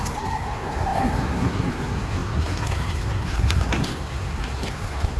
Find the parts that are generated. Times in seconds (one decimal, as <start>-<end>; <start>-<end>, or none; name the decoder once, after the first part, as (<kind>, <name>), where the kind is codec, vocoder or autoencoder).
0.0-5.2 (codec, SNAC)